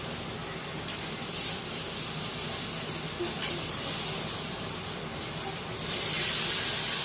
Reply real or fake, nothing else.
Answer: real